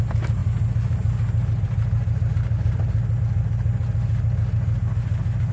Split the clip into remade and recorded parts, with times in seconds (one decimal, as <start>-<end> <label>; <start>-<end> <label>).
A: 0.0-5.5 recorded